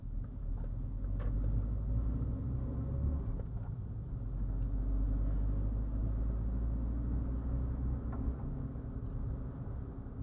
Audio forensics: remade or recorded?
recorded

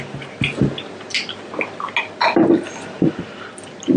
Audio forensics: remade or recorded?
recorded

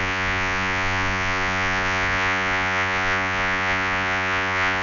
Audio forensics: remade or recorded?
remade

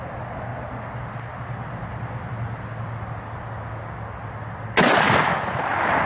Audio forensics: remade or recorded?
recorded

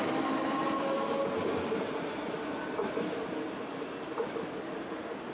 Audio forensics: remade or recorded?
recorded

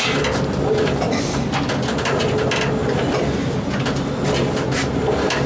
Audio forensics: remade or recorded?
recorded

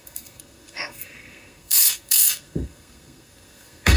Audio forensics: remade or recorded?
remade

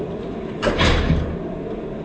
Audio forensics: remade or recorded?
remade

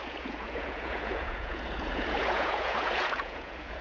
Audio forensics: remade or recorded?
remade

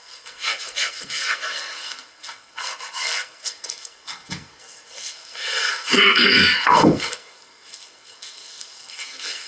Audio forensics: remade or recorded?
remade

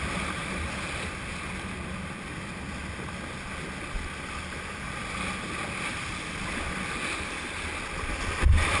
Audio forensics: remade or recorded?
recorded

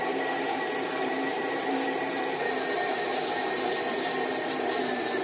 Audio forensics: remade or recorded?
remade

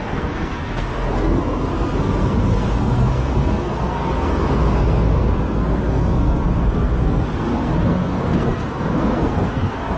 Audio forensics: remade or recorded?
remade